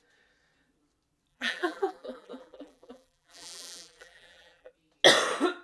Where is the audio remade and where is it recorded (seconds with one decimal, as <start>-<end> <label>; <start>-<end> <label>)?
0.0-1.3 recorded; 1.3-4.7 remade; 4.7-5.6 recorded